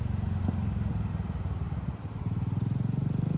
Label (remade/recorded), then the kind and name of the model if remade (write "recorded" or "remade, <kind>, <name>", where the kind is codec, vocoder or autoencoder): recorded